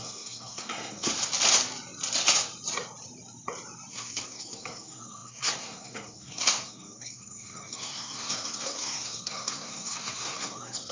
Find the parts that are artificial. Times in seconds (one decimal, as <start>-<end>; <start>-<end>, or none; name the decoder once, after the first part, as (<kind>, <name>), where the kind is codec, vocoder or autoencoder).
0.0-1.1 (codec, SNAC); 3.9-10.9